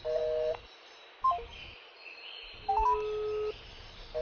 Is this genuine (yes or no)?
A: yes